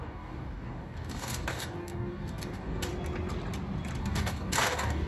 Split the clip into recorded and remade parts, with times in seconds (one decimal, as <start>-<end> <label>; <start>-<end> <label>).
0.0-2.9 remade; 2.9-4.0 recorded; 4.0-5.1 remade